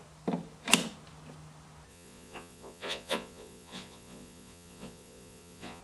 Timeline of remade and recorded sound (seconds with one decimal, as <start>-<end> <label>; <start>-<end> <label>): 0.0-1.9 recorded; 1.9-5.8 remade